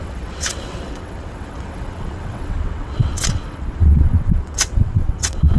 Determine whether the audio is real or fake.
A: fake